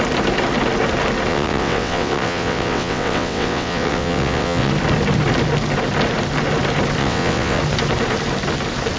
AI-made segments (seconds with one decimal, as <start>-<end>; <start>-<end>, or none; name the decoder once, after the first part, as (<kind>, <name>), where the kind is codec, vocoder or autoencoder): 1.3-4.7 (vocoder, WaveNeXt); 7.0-7.6